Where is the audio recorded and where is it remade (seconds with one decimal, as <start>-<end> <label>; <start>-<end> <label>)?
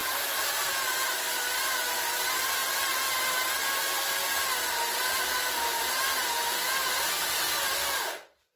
0.0-8.6 recorded